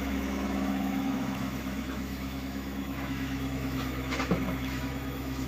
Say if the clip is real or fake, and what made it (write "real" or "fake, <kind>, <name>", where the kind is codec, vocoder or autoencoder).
fake, autoencoder, DAC-VAE